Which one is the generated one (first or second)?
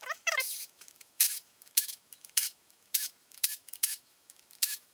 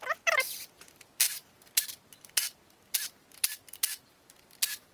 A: first